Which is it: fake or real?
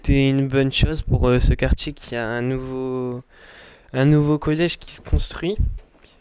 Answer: real